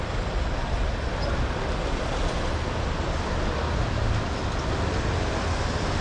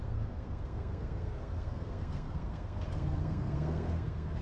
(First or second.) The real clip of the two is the first